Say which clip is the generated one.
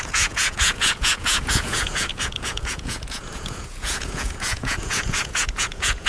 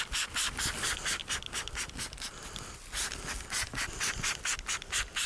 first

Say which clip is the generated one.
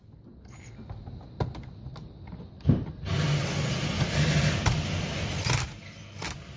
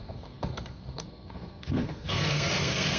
second